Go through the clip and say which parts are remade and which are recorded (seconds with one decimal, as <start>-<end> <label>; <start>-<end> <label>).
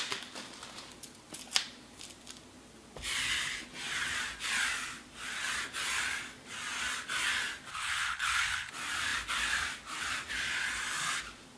0.0-7.7 recorded; 7.7-8.7 remade; 8.7-11.6 recorded